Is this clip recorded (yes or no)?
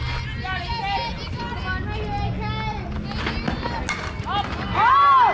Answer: yes